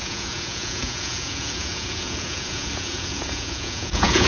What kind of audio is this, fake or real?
fake